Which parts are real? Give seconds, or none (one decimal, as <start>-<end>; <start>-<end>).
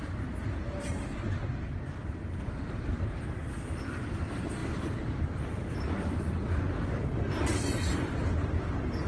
0.0-7.9; 8.5-9.1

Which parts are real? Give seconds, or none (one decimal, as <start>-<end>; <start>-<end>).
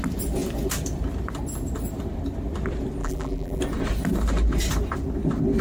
0.0-3.0; 3.6-5.6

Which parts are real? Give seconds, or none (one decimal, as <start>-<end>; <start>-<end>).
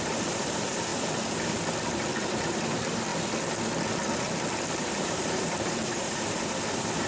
0.9-2.1; 3.1-4.8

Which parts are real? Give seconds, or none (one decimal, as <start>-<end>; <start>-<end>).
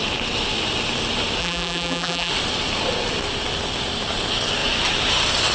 0.0-1.4; 2.3-5.5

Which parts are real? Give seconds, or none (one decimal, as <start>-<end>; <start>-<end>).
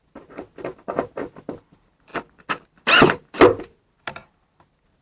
0.0-5.0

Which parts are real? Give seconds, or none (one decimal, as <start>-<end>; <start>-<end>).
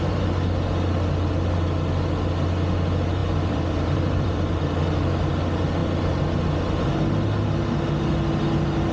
0.0-3.2; 4.8-8.9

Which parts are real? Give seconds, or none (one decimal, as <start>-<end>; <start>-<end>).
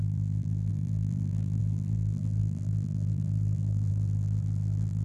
none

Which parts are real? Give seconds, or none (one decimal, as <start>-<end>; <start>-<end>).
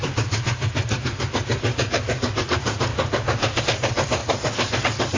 1.5-2.4; 2.9-3.6